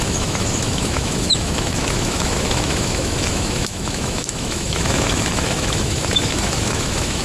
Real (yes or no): no